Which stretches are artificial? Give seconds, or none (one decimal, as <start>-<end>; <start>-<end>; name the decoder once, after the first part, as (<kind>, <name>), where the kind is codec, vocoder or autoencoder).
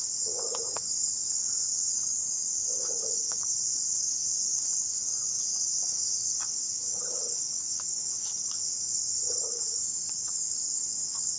0.0-11.4 (codec, DAC)